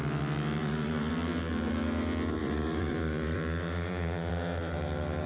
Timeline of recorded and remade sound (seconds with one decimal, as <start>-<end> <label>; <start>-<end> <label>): 0.0-0.6 recorded; 0.6-1.1 remade; 1.1-2.4 recorded; 2.4-4.3 remade; 4.3-5.3 recorded